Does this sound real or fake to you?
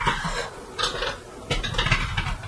real